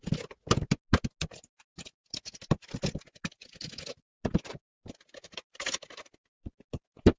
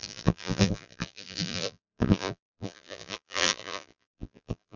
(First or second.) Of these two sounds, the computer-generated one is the second